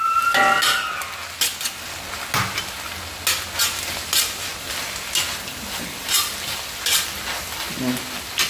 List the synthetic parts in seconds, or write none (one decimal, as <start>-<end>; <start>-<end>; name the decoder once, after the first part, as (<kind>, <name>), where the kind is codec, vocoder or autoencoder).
none

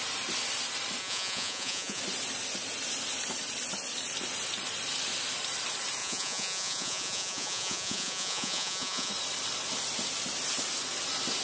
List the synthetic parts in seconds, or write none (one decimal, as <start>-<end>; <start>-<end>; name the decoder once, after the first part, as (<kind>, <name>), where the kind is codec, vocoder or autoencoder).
1.0-2.0 (vocoder, Vocos); 6.0-9.1

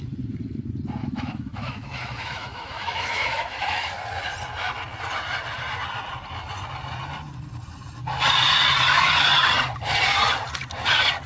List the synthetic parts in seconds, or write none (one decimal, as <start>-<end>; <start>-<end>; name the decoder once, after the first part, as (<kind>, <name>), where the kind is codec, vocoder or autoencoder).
1.0-3.9 (autoencoder, DAC-VAE)

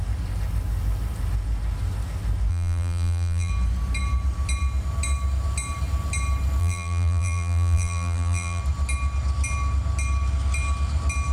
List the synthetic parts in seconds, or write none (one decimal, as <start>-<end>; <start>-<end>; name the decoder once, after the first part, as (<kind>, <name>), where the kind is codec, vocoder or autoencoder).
2.5-3.5 (vocoder, BigVGAN v2); 6.6-8.6

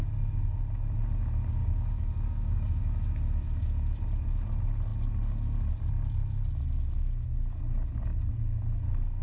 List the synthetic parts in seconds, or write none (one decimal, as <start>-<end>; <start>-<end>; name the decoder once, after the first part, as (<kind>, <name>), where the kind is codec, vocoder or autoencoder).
1.6-2.8 (codec, DAC)

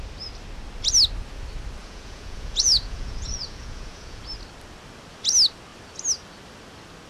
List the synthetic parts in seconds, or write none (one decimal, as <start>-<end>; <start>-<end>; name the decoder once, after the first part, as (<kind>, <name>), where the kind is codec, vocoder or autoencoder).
1.8-4.2 (vocoder, Vocos)

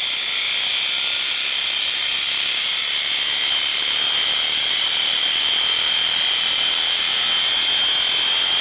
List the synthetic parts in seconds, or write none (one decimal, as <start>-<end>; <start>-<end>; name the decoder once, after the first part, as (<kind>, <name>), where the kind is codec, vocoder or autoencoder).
0.7-2.8 (vocoder, BigVGAN v2); 3.7-7.1